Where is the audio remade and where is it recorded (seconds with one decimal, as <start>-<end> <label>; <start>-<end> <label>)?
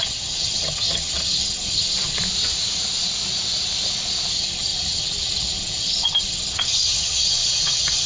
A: 0.0-2.2 remade; 2.2-4.3 recorded; 4.3-8.1 remade